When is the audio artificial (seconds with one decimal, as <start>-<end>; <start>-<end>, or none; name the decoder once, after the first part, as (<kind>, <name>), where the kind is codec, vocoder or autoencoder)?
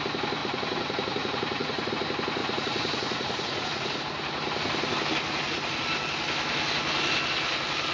0.4-1.9 (vocoder, Vocos); 2.4-4.0